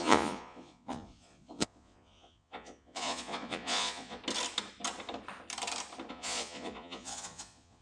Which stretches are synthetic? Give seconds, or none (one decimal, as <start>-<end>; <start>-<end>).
0.0-4.2; 6.1-7.8